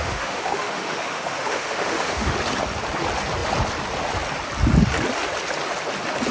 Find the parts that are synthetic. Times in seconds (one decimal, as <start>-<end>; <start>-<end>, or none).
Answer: 0.0-2.3

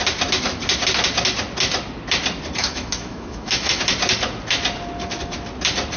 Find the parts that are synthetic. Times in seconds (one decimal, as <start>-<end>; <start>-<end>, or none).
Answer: 2.6-3.8